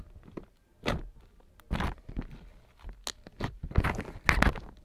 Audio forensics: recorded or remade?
recorded